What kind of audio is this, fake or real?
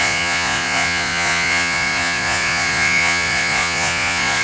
fake